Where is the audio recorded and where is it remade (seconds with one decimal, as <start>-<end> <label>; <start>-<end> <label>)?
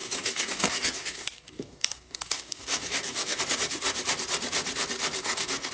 0.0-3.4 remade; 3.4-5.2 recorded; 5.2-5.7 remade